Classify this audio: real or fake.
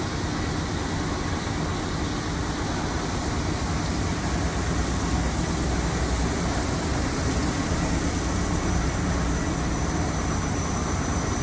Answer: real